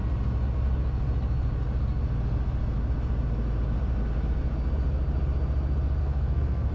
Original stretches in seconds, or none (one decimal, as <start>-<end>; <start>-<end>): 0.0-6.0